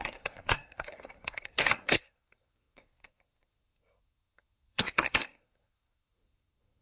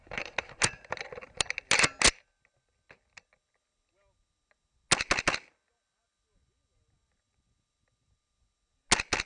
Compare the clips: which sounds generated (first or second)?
first